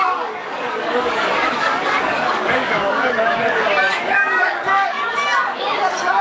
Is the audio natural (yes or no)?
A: no